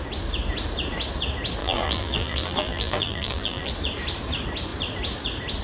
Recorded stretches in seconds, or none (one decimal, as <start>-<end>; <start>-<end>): 0.0-1.6; 3.7-5.6